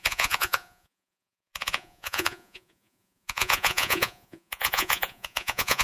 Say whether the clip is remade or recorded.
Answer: remade